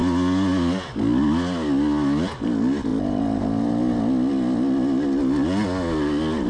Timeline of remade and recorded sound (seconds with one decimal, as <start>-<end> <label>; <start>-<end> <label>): 0.0-2.9 recorded; 2.9-4.0 remade; 4.0-6.5 recorded

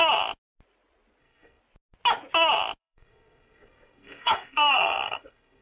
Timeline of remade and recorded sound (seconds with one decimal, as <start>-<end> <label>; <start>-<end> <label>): 0.0-1.2 recorded; 1.2-1.6 remade; 1.6-2.8 recorded; 2.8-5.6 remade